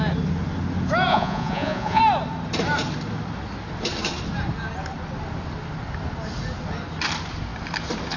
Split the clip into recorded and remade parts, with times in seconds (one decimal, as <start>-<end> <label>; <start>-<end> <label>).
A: 0.0-1.1 recorded; 1.1-2.0 remade; 2.0-8.2 recorded